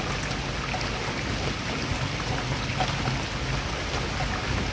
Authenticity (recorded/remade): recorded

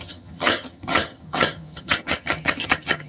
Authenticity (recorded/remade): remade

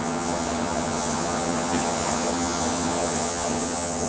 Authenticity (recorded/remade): remade